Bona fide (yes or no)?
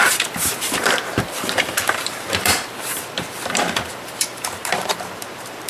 no